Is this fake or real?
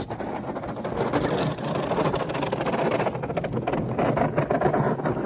real